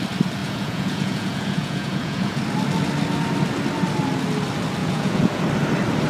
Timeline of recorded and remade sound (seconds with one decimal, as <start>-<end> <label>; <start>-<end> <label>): 0.0-0.4 recorded; 0.4-2.4 remade; 2.4-4.8 recorded; 4.8-5.4 remade; 5.4-6.1 recorded